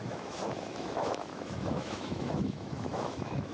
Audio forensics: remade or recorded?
remade